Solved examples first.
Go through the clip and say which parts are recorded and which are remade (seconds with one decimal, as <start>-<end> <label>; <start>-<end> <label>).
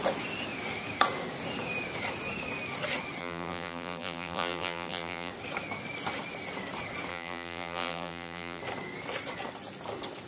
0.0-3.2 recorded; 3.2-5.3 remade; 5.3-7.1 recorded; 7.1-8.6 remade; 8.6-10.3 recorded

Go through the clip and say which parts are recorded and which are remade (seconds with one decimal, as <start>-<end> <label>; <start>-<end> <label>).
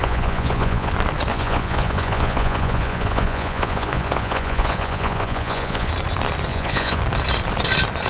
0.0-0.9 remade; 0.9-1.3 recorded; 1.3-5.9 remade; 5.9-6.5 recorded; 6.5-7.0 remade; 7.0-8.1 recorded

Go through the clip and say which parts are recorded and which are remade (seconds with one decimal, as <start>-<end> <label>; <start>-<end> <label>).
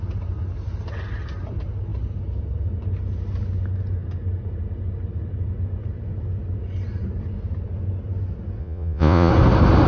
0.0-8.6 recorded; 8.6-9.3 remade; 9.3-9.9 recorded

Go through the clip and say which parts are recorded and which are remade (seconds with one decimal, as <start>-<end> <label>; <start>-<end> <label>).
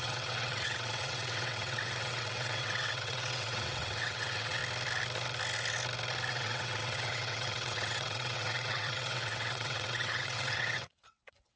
0.0-4.6 remade; 4.6-6.3 recorded; 6.3-11.6 remade